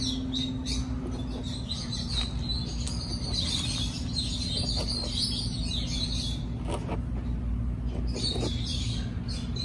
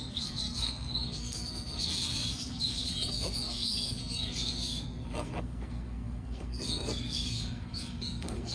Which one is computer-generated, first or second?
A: second